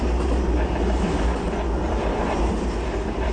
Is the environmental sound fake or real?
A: real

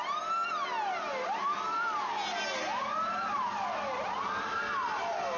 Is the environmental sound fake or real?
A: real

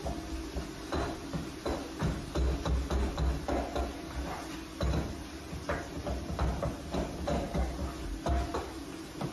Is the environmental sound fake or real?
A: real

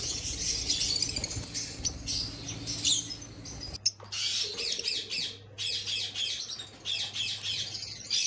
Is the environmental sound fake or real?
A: real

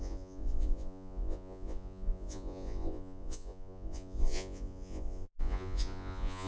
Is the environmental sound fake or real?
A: fake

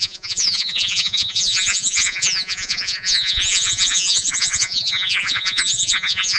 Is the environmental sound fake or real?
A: fake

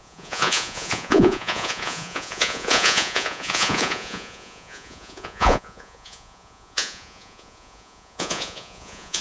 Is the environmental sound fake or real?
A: fake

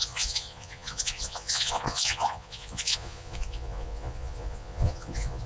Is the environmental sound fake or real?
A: fake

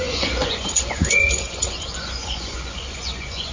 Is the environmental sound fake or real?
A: fake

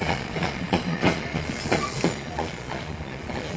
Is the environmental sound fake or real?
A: fake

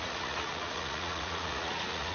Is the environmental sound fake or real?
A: fake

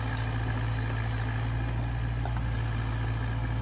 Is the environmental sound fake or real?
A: real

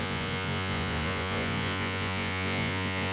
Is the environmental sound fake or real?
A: fake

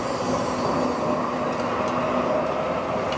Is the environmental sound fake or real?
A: real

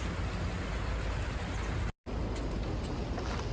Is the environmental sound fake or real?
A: real